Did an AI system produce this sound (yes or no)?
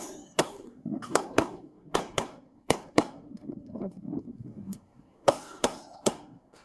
yes